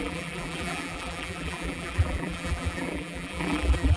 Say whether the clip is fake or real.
fake